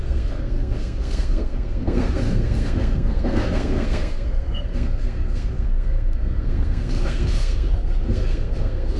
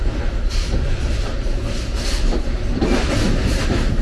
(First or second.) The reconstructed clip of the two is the first